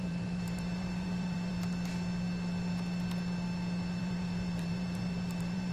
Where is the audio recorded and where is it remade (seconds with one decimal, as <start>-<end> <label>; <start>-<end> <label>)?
0.0-1.5 remade; 1.5-4.0 recorded; 4.0-5.7 remade